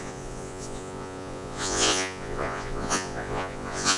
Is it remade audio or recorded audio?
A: remade